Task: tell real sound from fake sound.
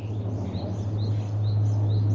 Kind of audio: real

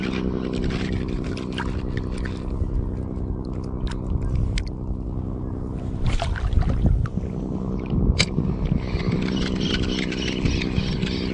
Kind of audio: real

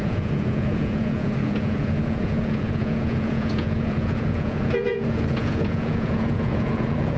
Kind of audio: fake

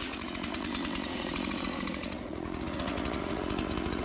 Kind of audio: fake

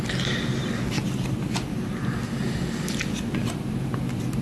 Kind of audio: real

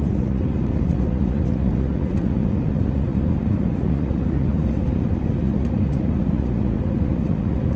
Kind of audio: fake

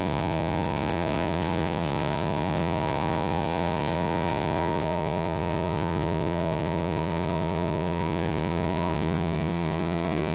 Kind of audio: fake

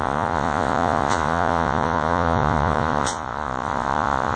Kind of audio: fake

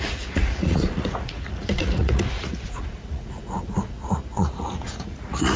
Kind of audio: fake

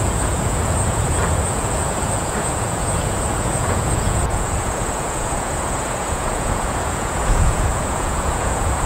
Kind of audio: fake